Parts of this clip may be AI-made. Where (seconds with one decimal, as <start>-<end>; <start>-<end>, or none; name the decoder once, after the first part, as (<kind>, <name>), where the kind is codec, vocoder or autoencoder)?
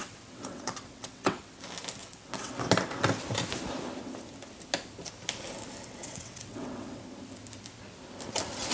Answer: 0.0-1.4 (vocoder, WaveNeXt); 2.0-2.6; 6.0-7.0